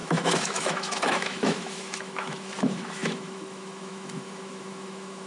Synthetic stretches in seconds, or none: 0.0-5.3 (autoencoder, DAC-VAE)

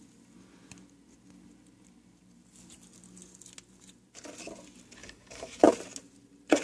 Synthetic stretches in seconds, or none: 5.0-5.7 (codec, DAC)

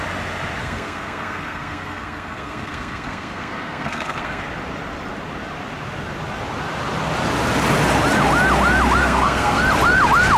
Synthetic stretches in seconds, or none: 0.6-4.4 (codec, SNAC); 9.0-9.6

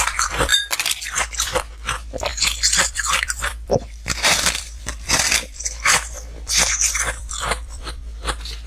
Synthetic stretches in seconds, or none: 0.0-8.7 (vocoder, BigVGAN v2)

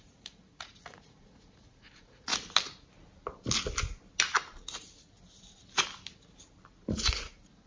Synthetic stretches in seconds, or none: 0.0-2.3 (vocoder, Vocos); 6.9-7.7